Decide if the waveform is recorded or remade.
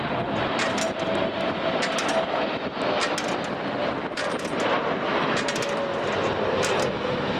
recorded